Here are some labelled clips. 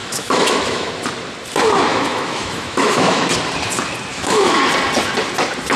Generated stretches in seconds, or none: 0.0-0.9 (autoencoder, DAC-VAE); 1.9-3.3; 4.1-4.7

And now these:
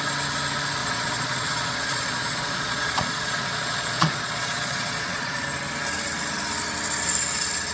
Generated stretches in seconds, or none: 0.8-5.4 (vocoder, Vocos)

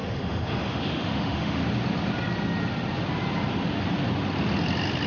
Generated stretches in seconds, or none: 0.0-1.6 (autoencoder, DAC-VAE)